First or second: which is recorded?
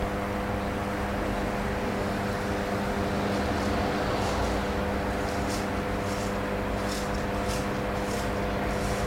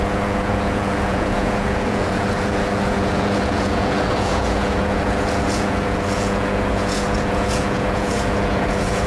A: first